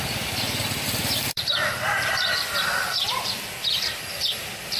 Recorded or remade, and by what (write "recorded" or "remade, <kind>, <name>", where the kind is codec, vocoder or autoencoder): remade, vocoder, BigVGAN v2